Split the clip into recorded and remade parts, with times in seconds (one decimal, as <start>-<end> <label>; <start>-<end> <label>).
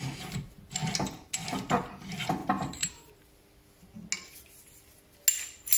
0.0-2.4 recorded; 2.4-3.1 remade; 3.1-5.8 recorded